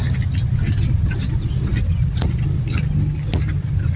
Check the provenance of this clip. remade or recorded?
recorded